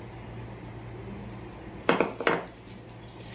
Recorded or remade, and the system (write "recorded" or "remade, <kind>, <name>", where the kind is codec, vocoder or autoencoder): recorded